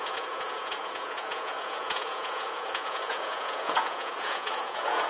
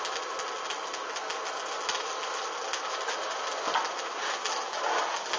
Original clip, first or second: second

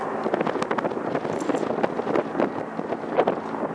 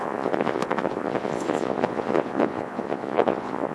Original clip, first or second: first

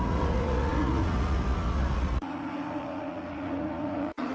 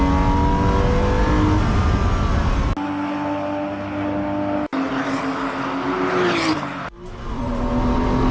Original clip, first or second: second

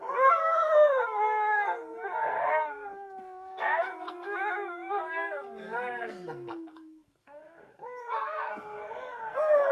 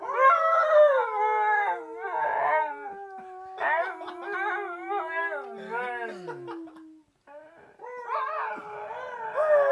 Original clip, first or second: second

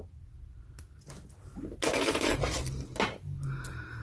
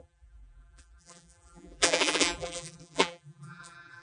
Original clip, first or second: first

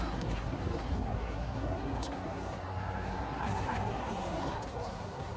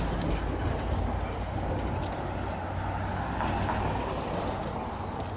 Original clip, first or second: second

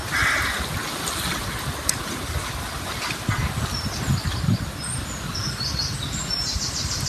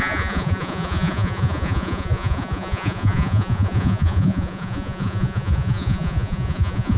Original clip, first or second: first